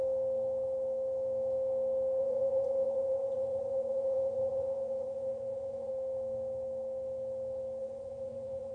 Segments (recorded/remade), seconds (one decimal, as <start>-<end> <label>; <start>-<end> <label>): 0.0-2.2 recorded; 2.2-5.9 remade; 5.9-7.8 recorded; 7.8-8.7 remade